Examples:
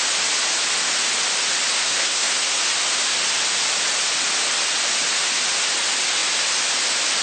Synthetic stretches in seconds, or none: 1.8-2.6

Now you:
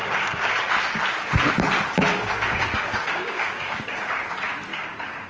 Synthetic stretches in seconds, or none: 0.0-0.7; 2.1-4.3; 4.7-5.3

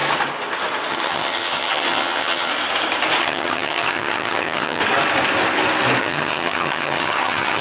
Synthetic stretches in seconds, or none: 0.9-2.5; 3.2-4.8; 6.0-7.6

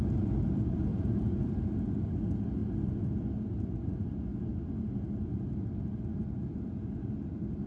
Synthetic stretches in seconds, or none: 0.9-1.5